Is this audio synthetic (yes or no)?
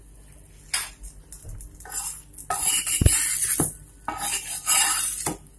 no